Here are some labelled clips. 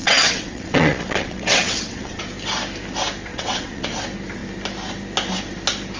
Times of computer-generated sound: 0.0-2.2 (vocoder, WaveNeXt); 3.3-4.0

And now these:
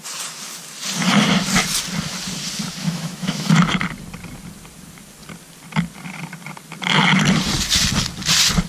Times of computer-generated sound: 2.8-3.5 (autoencoder, DAC-VAE)

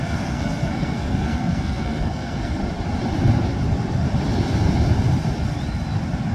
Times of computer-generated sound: 0.0-2.6 (codec, SNAC)

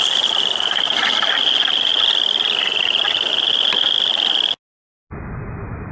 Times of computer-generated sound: none

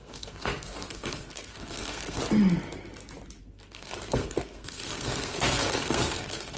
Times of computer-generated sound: 0.0-2.2 (codec, SNAC); 3.4-6.6

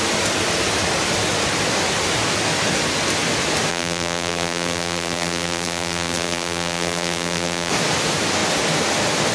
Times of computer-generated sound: 3.7-7.7 (vocoder, BigVGAN v2)

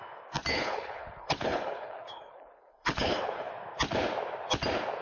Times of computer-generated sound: 0.5-3.5 (codec, HILCodec)

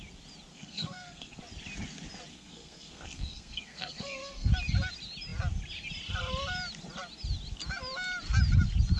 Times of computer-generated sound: 0.5-1.4 (codec, SNAC); 2.3-4.5